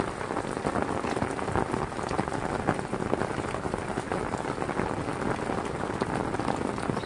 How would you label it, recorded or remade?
recorded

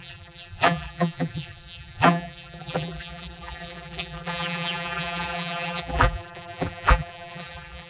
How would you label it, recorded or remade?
remade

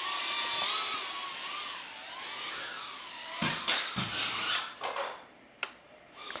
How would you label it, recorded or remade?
recorded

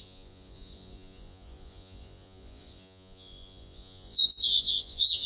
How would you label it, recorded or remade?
remade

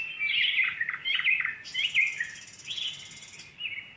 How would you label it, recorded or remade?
recorded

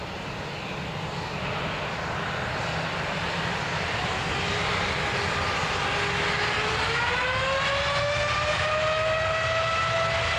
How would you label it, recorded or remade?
recorded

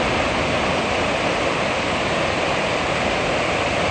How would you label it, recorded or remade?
recorded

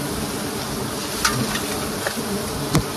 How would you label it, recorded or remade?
recorded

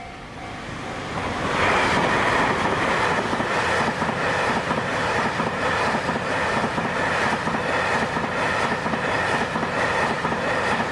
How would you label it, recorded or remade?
recorded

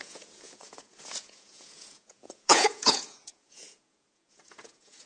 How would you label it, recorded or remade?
remade